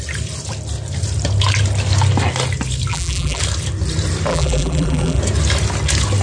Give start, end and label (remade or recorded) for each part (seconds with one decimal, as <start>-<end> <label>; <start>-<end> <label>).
0.0-2.9 recorded; 2.9-3.4 remade; 3.4-4.3 recorded; 4.3-5.2 remade; 5.2-6.2 recorded